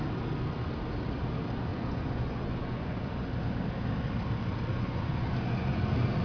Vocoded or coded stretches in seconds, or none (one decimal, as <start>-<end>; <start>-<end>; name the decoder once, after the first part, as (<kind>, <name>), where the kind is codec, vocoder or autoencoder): 1.7-3.1 (vocoder, Vocos); 4.7-5.8